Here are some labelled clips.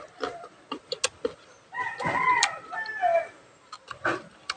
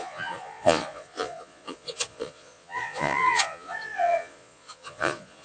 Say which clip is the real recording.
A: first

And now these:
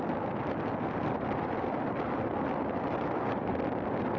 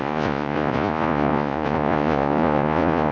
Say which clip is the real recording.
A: first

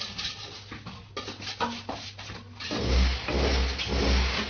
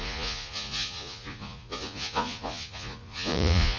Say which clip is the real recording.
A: first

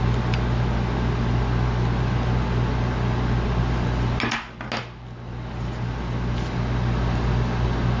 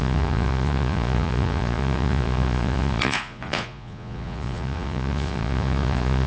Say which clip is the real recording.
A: first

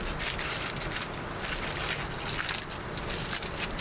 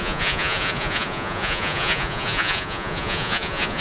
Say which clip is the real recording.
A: first